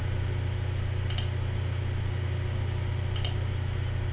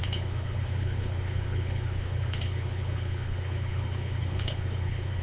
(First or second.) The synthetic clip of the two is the second